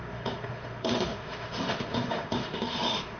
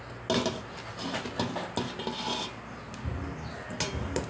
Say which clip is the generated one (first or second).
first